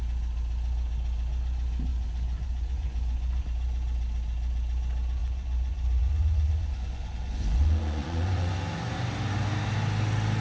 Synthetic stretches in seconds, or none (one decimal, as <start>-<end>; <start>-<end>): 1.9-3.4; 5.2-8.5